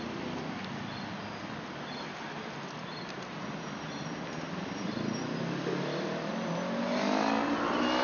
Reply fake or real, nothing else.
real